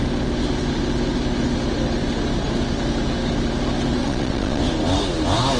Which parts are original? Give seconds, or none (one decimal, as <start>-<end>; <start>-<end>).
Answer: 0.0-4.0; 4.6-5.6